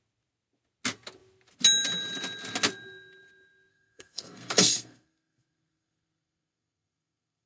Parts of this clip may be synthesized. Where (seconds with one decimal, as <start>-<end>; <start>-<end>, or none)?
3.7-7.5